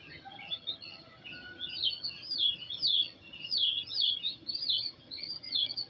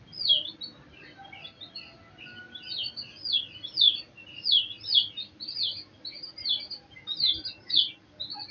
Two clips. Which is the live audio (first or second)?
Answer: second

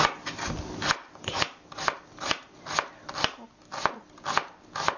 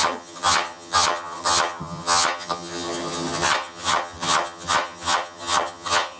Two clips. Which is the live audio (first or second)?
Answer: first